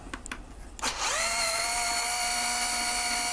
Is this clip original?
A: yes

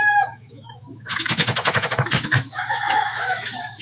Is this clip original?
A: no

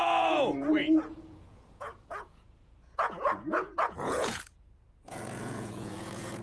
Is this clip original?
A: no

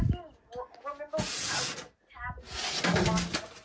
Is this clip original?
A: yes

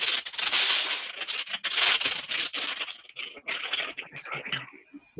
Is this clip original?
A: yes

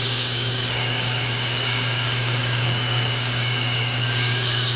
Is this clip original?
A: no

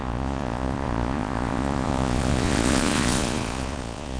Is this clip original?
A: no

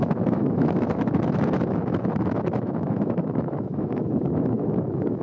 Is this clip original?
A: no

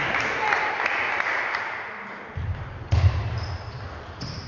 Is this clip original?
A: yes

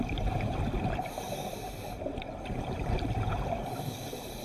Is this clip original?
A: no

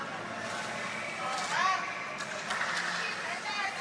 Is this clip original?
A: yes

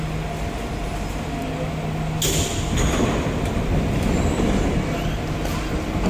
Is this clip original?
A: yes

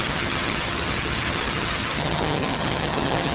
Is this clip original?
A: no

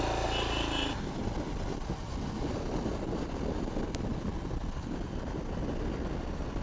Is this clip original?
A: yes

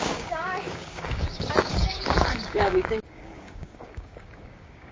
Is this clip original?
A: no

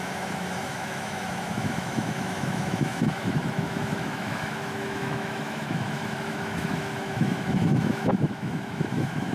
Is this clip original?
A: no